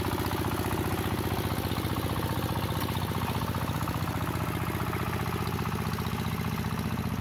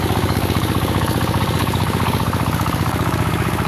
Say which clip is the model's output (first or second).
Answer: second